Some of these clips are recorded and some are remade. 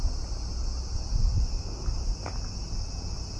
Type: recorded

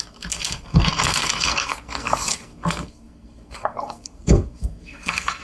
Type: remade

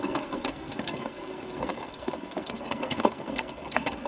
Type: remade